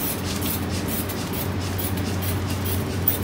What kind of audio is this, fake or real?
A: real